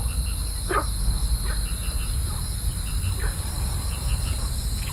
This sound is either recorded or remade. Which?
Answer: recorded